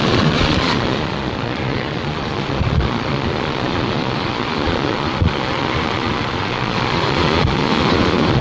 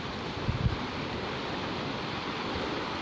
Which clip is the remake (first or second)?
first